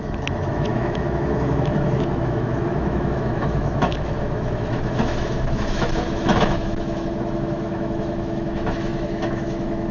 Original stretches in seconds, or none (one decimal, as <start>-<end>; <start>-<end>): none